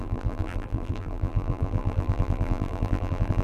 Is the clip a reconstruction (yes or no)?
yes